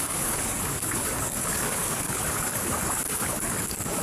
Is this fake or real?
fake